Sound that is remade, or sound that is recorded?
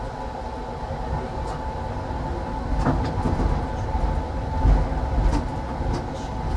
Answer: recorded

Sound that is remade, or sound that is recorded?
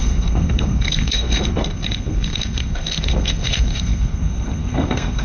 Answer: remade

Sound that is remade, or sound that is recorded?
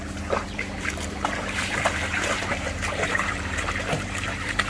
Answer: remade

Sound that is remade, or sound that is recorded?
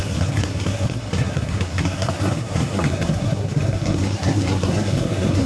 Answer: remade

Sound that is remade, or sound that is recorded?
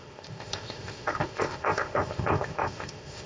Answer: remade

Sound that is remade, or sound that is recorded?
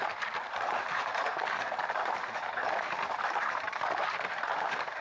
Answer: remade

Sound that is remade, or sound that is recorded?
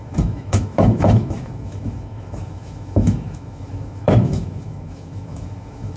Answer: remade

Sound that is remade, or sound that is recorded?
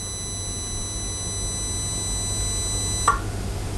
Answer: recorded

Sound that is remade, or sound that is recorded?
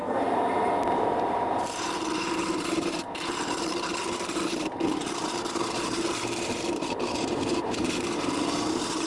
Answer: remade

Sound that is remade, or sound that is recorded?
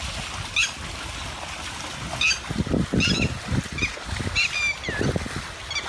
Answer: recorded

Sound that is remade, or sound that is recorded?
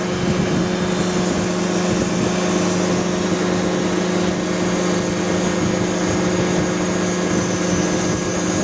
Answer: recorded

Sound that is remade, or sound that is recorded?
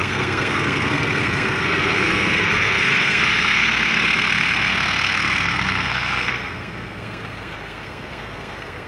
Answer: remade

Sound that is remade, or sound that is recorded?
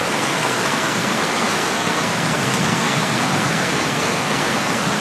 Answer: remade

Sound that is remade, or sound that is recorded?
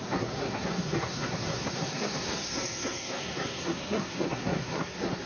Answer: remade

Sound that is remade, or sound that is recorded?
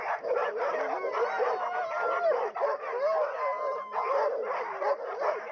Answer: recorded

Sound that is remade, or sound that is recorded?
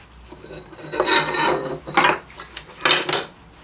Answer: recorded